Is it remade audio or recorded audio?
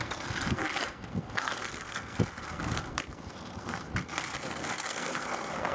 remade